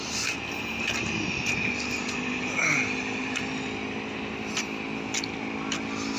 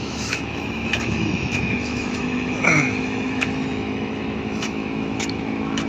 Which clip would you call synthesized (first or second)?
second